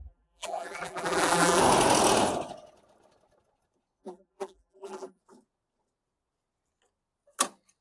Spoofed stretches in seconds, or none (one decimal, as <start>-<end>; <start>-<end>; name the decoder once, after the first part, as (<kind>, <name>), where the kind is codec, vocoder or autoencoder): 0.0-1.6 (vocoder, BigVGAN v2); 4.0-5.2